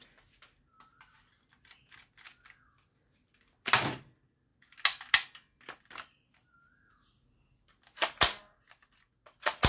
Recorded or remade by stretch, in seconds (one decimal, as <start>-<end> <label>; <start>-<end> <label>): 0.0-9.7 recorded